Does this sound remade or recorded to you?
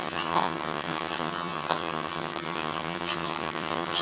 remade